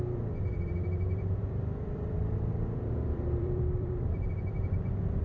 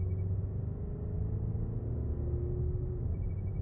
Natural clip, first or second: second